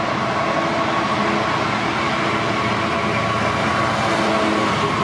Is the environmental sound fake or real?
real